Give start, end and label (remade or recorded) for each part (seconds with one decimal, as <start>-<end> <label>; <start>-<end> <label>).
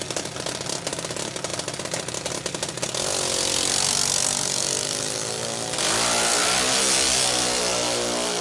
0.0-8.4 recorded